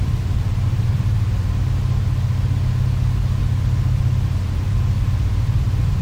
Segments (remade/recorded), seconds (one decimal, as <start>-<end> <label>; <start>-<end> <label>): 0.0-1.3 remade; 1.3-3.4 recorded; 3.4-6.0 remade